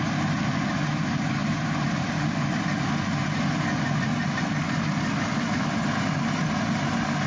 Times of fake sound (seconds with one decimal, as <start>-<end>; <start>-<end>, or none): none